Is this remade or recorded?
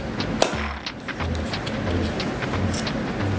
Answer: recorded